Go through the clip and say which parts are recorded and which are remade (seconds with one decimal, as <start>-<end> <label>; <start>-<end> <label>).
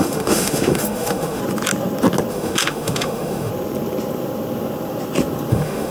0.0-1.4 remade; 1.4-2.3 recorded; 2.3-3.5 remade; 3.5-5.5 recorded; 5.5-5.9 remade